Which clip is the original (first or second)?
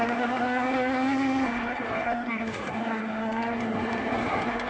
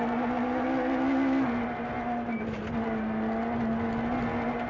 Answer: second